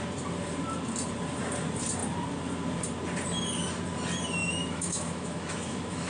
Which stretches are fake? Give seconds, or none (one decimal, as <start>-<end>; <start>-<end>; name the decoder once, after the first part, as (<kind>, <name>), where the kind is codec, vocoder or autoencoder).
4.4-6.1 (autoencoder, DAC-VAE)